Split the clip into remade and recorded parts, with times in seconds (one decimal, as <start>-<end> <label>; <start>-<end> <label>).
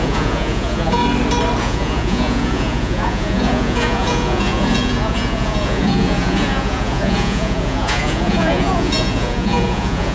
0.0-1.0 remade; 1.0-1.6 recorded; 1.6-10.1 remade